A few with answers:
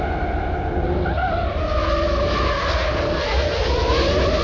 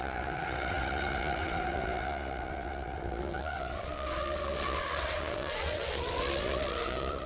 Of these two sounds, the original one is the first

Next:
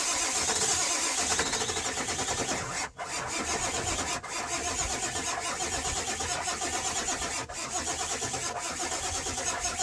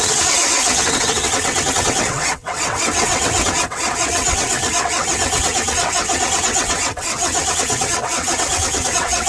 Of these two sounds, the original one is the first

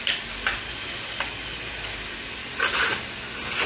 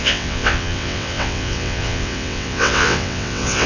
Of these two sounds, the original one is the first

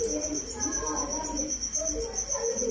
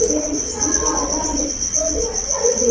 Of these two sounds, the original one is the first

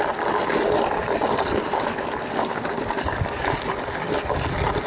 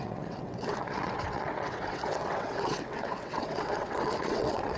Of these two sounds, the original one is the first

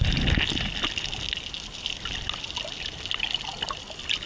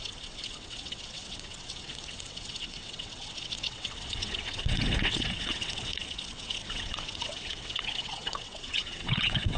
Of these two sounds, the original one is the first